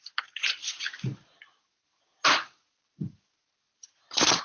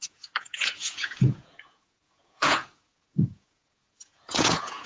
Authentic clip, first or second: first